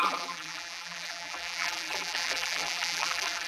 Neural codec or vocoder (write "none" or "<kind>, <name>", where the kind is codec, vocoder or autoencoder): vocoder, BigVGAN v2